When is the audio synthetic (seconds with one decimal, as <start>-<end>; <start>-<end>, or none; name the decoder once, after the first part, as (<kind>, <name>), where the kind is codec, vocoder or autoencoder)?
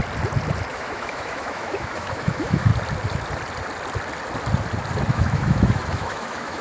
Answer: 0.7-2.7 (autoencoder, DAC-VAE); 5.1-6.6